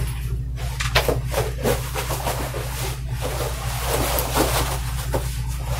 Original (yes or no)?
yes